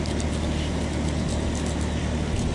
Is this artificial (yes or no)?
no